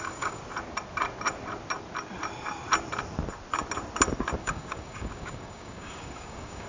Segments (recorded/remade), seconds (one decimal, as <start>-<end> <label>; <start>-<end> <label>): 0.0-0.4 remade; 0.4-4.4 recorded; 4.4-6.7 remade